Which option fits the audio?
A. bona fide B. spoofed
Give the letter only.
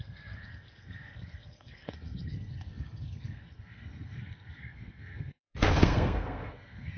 B